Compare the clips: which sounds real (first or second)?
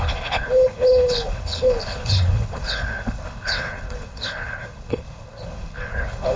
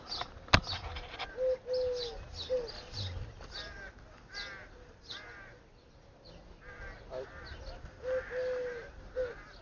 second